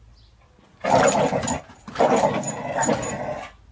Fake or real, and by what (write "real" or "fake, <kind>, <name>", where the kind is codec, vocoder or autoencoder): real